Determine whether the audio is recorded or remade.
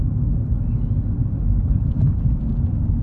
recorded